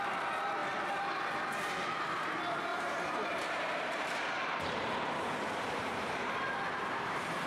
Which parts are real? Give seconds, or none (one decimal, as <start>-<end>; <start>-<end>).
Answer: 0.0-2.7; 5.1-5.9; 6.6-7.5